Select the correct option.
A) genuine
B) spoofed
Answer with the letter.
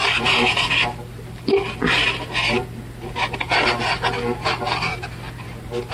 B